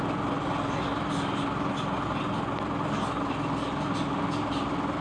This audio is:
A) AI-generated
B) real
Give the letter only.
B